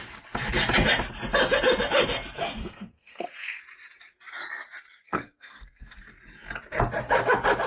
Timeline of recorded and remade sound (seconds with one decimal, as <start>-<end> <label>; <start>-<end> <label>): 0.0-2.6 recorded; 2.6-3.6 remade; 3.6-5.0 recorded; 5.0-6.0 remade; 6.0-7.7 recorded